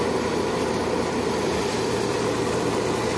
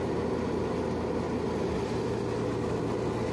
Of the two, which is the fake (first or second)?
first